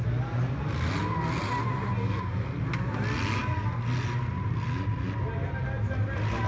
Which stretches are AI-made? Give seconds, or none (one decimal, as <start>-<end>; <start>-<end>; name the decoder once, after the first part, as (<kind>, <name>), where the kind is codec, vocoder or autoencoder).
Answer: none